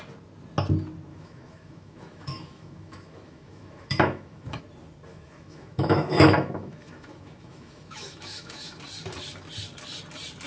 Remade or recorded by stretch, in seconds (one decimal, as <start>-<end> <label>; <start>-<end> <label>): 0.0-1.1 recorded; 1.1-4.6 remade; 4.6-5.1 recorded; 5.1-8.8 remade; 8.8-10.5 recorded